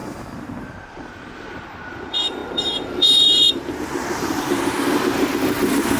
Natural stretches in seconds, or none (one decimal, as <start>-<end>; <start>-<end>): 0.0-1.9